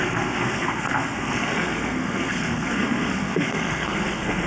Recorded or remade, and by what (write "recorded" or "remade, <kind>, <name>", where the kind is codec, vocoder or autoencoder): remade, codec, SNAC